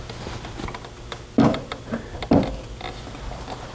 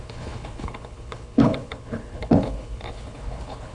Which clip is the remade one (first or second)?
second